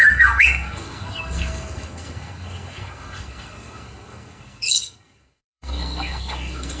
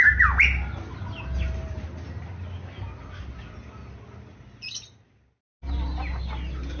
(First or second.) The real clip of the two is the second